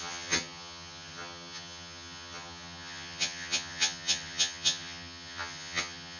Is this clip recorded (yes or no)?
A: no